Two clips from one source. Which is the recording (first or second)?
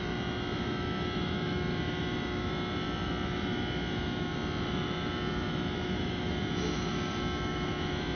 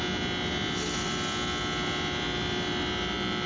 second